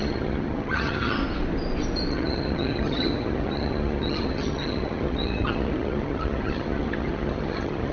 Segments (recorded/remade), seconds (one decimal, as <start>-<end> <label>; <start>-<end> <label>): 0.0-1.2 remade; 1.2-2.1 recorded; 2.1-7.9 remade